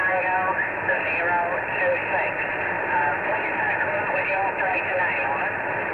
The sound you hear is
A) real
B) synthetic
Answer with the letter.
A